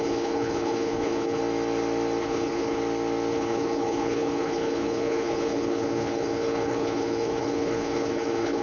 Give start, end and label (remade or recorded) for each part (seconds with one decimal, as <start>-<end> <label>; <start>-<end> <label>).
0.0-1.4 remade; 1.4-2.2 recorded; 2.2-2.8 remade; 2.8-3.3 recorded; 3.3-8.6 remade

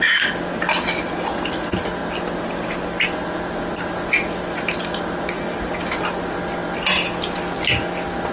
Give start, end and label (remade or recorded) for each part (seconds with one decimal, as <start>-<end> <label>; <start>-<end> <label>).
0.0-8.3 recorded

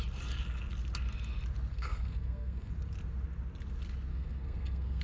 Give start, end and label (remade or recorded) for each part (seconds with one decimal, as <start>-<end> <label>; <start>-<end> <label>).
0.0-1.7 recorded; 1.7-2.7 remade; 2.7-4.1 recorded; 4.1-5.0 remade

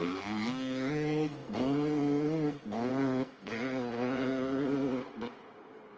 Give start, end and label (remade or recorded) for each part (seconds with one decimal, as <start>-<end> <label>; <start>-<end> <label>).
0.0-4.9 remade; 4.9-6.0 recorded